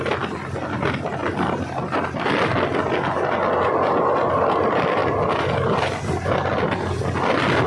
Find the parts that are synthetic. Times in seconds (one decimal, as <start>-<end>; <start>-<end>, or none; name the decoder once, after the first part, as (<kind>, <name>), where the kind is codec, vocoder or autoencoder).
5.0-6.2 (vocoder, BigVGAN v2)